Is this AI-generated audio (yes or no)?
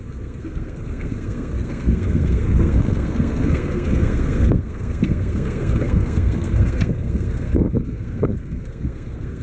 yes